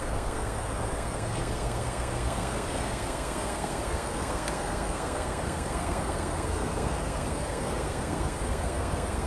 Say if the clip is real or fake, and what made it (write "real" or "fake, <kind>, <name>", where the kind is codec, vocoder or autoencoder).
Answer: fake, codec, SNAC